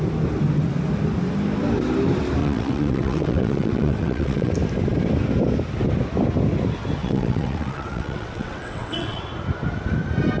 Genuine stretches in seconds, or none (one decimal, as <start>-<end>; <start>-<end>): 0.0-2.4; 4.5-7.0; 9.2-10.4